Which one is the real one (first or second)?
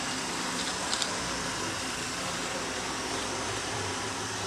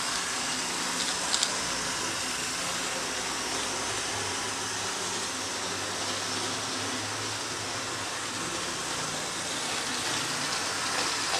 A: second